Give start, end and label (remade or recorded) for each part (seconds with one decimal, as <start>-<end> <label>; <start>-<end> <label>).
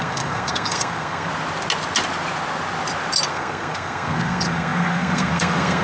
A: 0.0-1.3 remade; 1.3-3.3 recorded; 3.3-5.8 remade